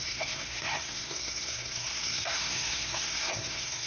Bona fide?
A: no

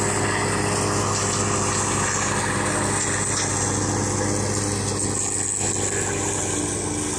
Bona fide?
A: yes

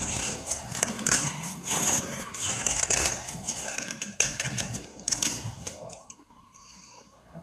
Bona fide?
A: no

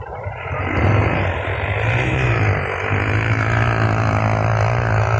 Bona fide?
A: yes